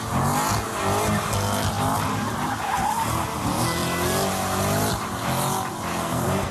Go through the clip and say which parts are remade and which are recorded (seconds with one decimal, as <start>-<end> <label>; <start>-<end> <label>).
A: 0.0-5.9 recorded; 5.9-6.5 remade